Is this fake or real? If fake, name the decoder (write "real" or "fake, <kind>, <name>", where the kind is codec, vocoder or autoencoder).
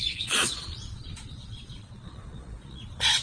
fake, vocoder, Vocos